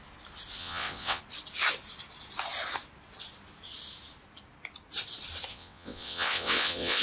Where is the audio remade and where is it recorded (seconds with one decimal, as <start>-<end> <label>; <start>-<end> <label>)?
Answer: 0.0-0.6 recorded; 0.6-1.2 remade; 1.2-5.5 recorded; 5.5-7.0 remade